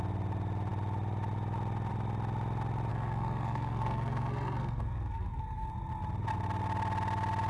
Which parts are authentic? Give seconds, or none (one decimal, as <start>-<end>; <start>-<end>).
0.0-2.9; 5.7-7.5